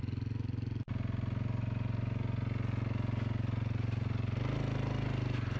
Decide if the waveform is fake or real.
real